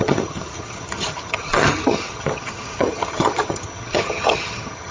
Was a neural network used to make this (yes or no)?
yes